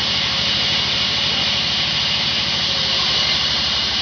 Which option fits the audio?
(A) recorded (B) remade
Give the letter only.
B